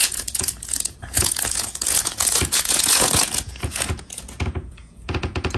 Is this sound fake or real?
fake